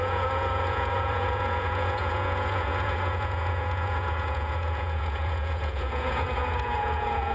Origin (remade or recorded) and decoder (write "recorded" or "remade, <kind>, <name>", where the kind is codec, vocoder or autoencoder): remade, vocoder, Vocos